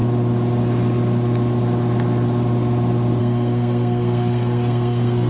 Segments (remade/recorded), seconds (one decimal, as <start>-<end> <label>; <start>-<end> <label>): 0.0-3.2 recorded; 3.2-5.3 remade